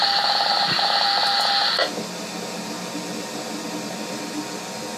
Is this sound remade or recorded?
recorded